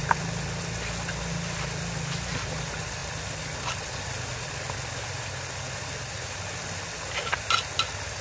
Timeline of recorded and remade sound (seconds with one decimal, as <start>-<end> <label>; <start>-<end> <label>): 0.0-8.2 recorded